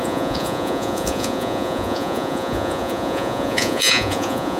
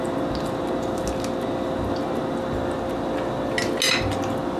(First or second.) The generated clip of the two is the first